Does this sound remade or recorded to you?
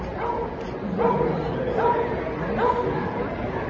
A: recorded